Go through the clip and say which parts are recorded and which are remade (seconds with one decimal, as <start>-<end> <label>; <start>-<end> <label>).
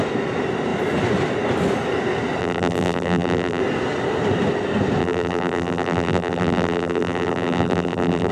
0.0-2.4 recorded; 2.4-3.6 remade; 3.6-5.0 recorded; 5.0-8.3 remade